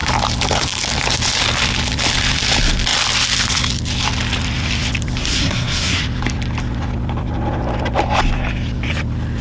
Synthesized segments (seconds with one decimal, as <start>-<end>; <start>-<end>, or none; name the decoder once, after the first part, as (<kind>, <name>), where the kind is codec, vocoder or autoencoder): 5.2-6.0 (codec, SNAC)